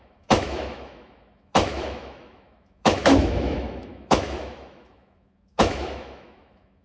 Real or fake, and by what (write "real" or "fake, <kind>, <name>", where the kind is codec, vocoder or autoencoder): fake, autoencoder, DAC-VAE